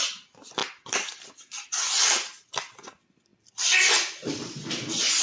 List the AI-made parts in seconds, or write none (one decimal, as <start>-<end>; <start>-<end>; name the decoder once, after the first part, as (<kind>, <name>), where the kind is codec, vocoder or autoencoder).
0.0-3.3 (vocoder, BigVGAN v2); 4.3-5.2

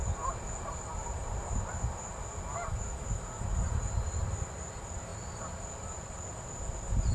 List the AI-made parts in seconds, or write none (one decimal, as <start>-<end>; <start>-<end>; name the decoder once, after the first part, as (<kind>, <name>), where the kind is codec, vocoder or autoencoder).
none

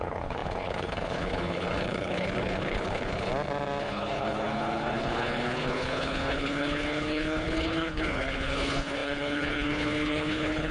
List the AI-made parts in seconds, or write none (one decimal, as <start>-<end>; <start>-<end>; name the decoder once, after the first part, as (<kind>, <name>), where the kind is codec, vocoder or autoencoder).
0.0-3.3 (codec, HILCodec); 3.8-10.7

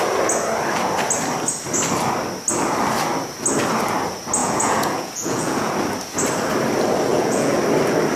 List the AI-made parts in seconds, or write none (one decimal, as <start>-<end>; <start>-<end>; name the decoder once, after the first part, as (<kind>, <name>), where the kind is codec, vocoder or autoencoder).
4.4-5.7 (vocoder, Vocos); 7.1-7.6

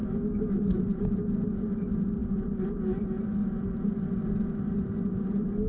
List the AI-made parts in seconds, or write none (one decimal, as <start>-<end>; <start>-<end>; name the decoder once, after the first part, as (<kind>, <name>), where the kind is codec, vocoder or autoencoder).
0.0-0.7 (autoencoder, DAC-VAE)